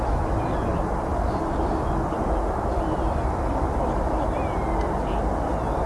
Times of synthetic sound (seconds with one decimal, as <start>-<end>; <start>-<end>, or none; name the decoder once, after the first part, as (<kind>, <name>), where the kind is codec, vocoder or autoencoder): none